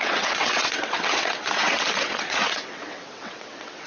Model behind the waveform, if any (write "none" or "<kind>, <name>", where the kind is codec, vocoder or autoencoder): vocoder, WaveNeXt